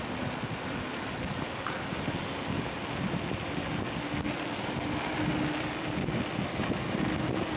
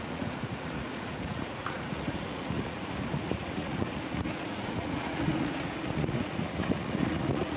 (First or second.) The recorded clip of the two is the first